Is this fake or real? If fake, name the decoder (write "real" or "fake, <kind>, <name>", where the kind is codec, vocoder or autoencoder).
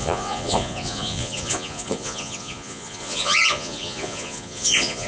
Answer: fake, vocoder, Vocos